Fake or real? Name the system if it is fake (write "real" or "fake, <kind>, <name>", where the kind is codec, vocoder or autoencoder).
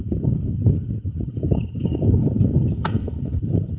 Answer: fake, codec, HILCodec